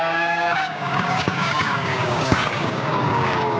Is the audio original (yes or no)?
no